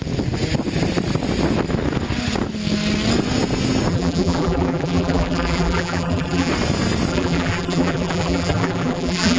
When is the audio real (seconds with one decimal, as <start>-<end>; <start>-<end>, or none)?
0.0-3.9; 6.5-7.1